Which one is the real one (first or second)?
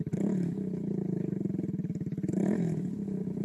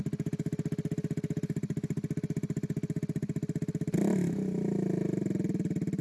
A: second